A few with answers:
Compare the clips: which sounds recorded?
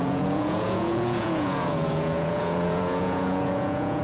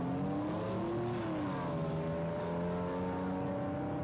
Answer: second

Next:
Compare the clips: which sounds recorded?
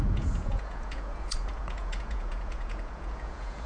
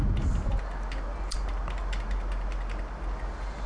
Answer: second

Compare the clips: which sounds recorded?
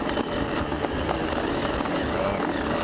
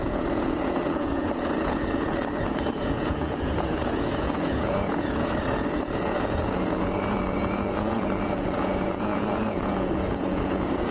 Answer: first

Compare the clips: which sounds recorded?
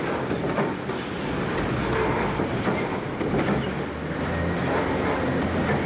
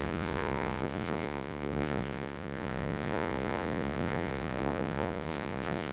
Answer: first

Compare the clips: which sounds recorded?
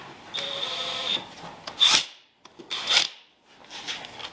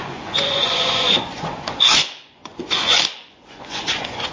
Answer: first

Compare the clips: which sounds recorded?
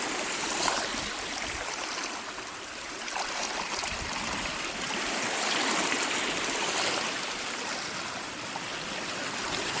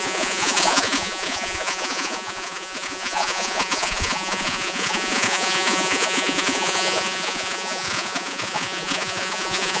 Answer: first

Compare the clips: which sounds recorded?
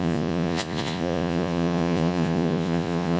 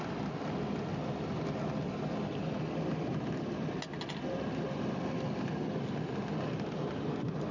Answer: second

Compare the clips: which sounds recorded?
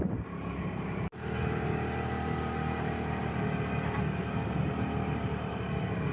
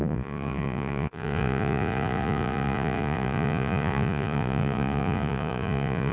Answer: first